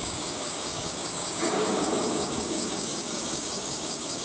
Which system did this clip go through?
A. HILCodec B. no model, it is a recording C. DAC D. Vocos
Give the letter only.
C